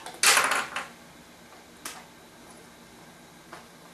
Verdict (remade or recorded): recorded